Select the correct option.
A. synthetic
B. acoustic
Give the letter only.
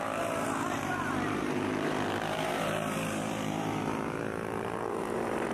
A